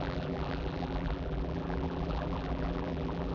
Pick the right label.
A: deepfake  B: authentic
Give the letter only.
A